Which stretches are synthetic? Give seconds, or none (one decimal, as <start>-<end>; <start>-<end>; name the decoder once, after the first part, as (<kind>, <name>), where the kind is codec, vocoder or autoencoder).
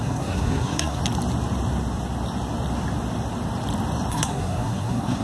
0.0-1.0 (codec, SNAC); 4.1-5.2